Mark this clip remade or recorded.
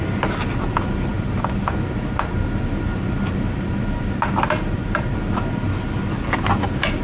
recorded